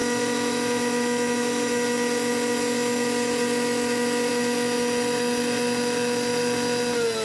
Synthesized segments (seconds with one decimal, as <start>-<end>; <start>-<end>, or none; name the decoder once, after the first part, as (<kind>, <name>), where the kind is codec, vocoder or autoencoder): none